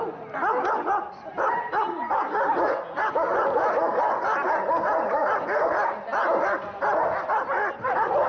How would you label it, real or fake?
real